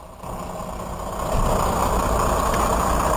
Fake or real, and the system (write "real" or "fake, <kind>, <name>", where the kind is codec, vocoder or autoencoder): real